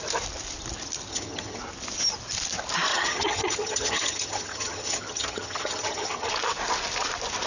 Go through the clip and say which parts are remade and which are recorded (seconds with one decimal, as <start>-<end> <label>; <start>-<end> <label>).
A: 0.0-1.1 recorded; 1.1-1.6 remade; 1.6-2.9 recorded; 2.9-6.3 remade; 6.3-7.5 recorded